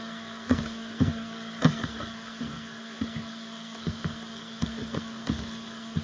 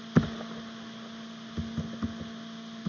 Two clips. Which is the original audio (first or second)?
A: second